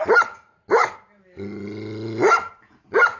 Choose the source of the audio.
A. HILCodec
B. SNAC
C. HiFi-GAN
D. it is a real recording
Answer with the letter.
D